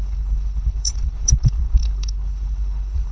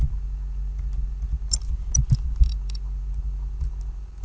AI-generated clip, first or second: first